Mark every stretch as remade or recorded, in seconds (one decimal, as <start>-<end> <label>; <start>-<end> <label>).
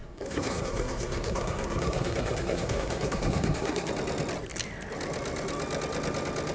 0.0-3.9 remade; 3.9-6.5 recorded